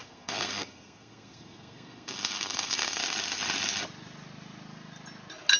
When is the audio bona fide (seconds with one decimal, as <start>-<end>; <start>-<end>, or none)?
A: 3.0-5.6